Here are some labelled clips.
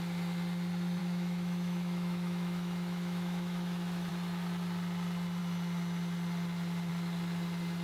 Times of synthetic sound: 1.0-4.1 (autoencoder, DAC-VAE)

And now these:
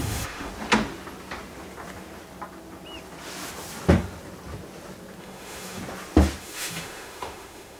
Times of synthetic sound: 0.0-0.5 (autoencoder, DAC-VAE); 5.2-5.8; 6.4-7.8

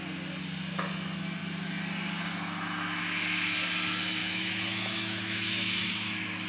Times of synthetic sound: 4.2-6.5 (autoencoder, DAC-VAE)

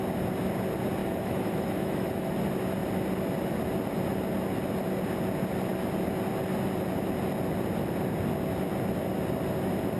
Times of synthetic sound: 1.0-2.3 (autoencoder, DAC-VAE)

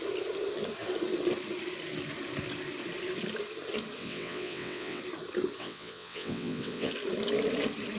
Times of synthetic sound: 4.0-5.0 (vocoder, WaveNeXt); 5.6-6.9